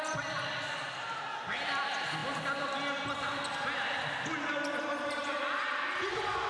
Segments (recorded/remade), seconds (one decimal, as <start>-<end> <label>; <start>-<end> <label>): 0.0-6.5 recorded